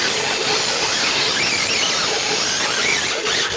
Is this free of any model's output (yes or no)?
yes